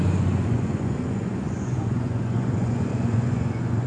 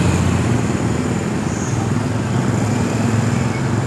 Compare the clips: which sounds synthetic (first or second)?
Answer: first